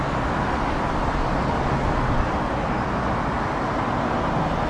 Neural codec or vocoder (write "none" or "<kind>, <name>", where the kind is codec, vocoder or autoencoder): none